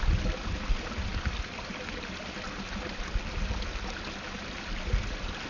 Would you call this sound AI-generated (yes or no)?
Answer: no